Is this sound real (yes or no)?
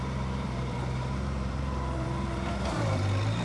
no